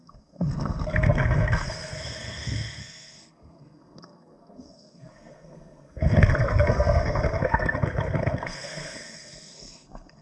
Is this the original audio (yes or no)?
no